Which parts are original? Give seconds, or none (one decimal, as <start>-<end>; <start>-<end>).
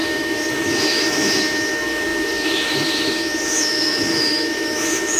none